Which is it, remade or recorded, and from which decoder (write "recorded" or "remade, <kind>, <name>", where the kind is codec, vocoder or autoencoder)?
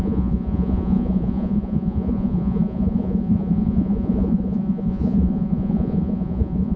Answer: remade, vocoder, Vocos